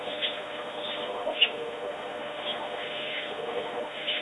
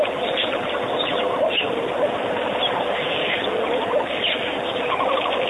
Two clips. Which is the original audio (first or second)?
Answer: second